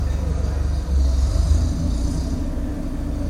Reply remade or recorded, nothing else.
recorded